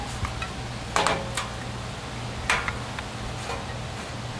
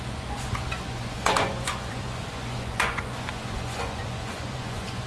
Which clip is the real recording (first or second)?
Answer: first